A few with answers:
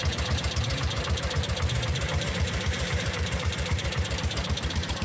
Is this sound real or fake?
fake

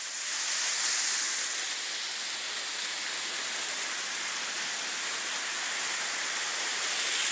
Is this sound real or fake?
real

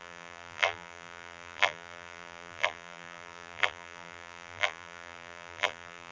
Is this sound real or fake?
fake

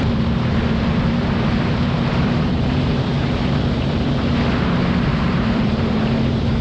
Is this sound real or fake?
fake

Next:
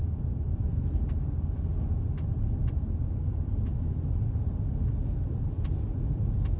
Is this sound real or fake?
real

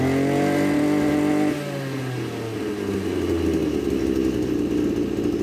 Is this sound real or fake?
real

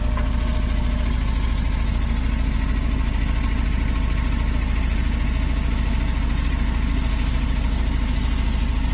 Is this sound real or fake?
real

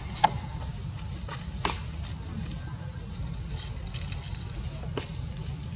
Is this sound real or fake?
real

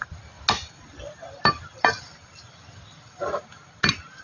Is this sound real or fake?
real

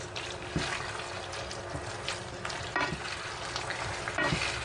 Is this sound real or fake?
real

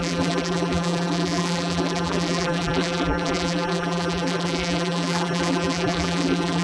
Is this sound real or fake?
fake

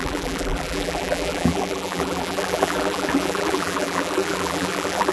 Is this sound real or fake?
fake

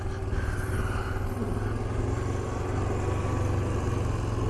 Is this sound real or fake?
real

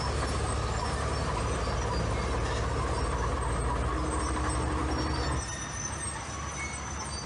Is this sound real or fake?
real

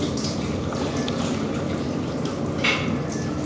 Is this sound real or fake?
real